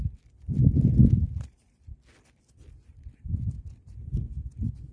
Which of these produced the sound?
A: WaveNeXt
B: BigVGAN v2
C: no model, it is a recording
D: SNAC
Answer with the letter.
C